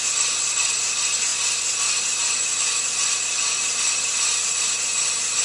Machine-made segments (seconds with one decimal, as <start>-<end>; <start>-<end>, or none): none